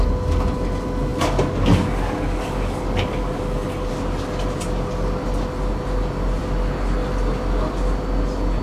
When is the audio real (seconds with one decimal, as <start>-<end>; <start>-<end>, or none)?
0.0-1.1; 3.9-8.6